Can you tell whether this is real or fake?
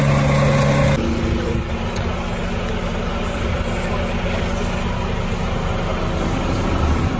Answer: real